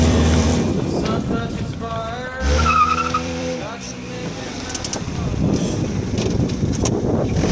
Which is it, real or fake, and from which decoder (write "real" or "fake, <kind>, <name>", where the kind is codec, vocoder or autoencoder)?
fake, vocoder, BigVGAN v2